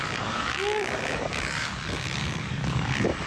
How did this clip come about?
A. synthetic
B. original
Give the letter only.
A